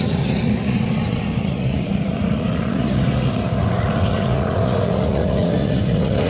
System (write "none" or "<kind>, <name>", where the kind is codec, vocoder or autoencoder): vocoder, Vocos